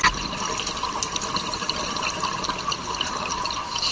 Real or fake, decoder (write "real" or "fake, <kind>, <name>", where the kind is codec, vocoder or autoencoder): real